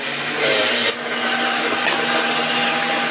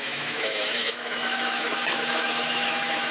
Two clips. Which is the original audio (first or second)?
first